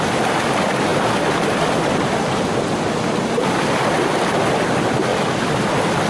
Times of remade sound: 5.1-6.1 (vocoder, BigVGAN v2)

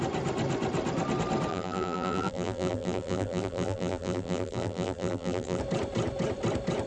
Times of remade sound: 1.5-5.6 (vocoder, BigVGAN v2)

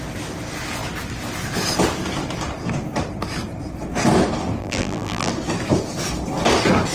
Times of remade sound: 4.6-5.3 (vocoder, BigVGAN v2)

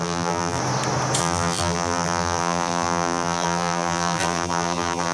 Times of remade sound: 0.0-0.6 (vocoder, BigVGAN v2); 1.2-5.1

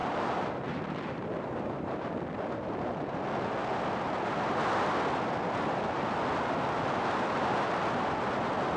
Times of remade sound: 0.0-2.1 (vocoder, BigVGAN v2)

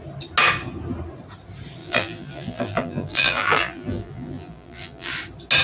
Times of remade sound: 1.8-5.1 (vocoder, BigVGAN v2)

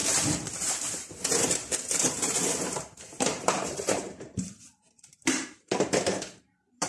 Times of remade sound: 0.0-6.9 (vocoder, BigVGAN v2)